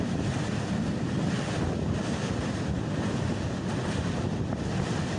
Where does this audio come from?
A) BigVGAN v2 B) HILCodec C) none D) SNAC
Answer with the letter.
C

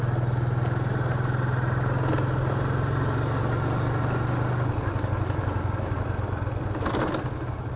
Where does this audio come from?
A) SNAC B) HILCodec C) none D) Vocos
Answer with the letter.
C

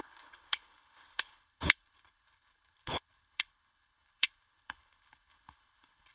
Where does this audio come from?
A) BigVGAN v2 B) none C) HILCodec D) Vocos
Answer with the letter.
C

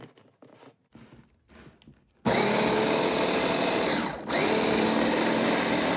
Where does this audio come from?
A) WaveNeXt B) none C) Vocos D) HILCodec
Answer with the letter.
B